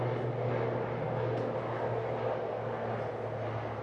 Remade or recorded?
recorded